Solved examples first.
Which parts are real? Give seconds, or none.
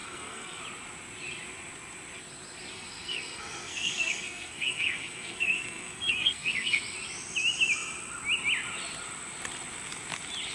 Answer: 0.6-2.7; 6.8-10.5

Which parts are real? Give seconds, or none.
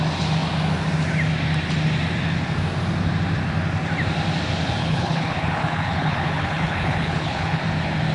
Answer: 0.0-4.8; 7.6-8.1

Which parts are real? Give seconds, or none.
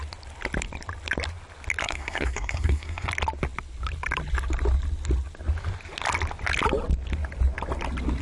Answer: 0.0-1.8; 3.1-8.2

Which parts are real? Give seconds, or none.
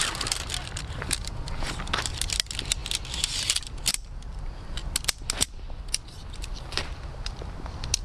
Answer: 0.0-8.0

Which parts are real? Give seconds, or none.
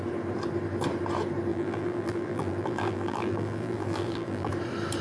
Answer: 0.0-1.5; 4.5-5.0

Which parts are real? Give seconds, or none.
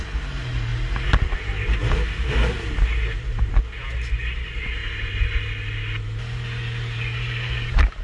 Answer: 0.0-8.0